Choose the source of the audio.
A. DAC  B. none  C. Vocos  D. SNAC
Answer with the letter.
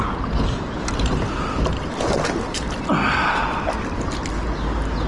B